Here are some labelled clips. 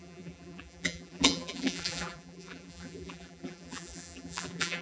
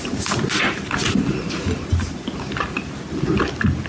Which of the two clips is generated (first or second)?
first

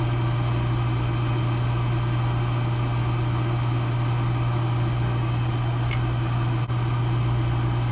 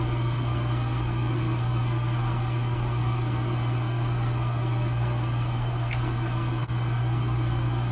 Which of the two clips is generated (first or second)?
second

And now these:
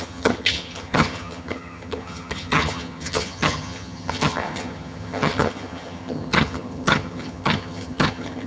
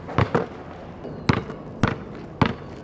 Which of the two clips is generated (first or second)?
first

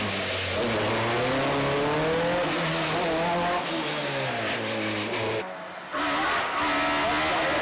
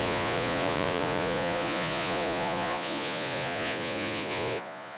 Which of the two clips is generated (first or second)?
second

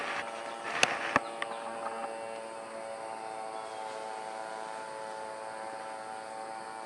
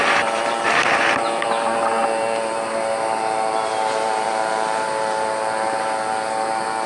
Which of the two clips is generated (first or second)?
second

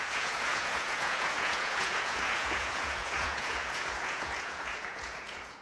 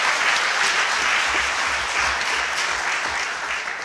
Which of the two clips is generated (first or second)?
first